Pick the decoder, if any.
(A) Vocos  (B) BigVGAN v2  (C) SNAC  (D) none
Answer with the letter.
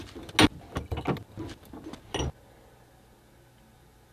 D